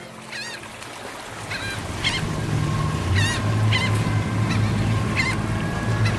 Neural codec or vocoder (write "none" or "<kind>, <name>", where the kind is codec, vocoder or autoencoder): none